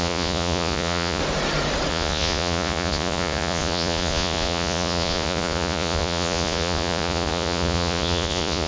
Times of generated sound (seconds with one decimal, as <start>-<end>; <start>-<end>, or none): 0.0-1.2; 1.9-8.7